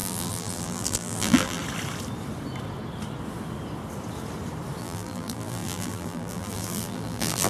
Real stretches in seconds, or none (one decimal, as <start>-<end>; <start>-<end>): 1.6-4.8